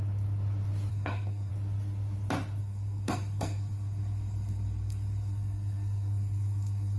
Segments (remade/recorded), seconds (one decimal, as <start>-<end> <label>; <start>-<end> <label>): 0.0-0.9 recorded; 0.9-1.5 remade; 1.5-2.6 recorded; 2.6-7.0 remade